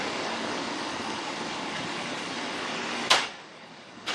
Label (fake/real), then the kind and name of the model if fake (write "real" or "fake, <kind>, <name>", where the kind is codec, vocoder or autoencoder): fake, codec, DAC